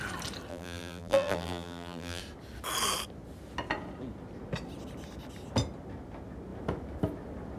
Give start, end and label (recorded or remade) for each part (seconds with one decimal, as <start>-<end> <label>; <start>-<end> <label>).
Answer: 0.0-0.5 recorded; 0.5-2.2 remade; 2.2-7.6 recorded